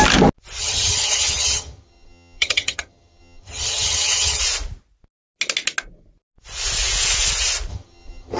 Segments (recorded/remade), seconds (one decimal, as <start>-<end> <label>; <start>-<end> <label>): 0.0-0.6 recorded; 0.6-4.4 remade; 4.4-7.7 recorded; 7.7-8.4 remade